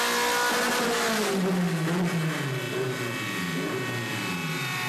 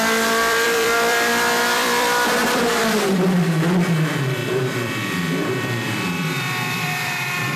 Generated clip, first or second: second